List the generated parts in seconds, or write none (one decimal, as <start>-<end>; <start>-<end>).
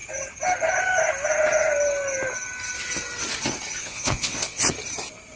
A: 3.8-4.7